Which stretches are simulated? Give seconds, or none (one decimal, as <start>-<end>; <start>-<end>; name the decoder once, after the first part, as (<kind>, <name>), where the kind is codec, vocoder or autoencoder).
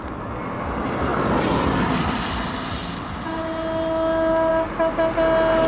none